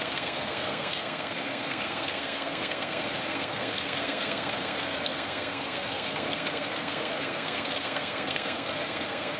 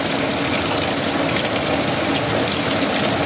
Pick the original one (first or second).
second